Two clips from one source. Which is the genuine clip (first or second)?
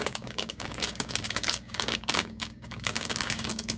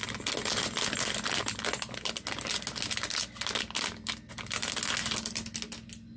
second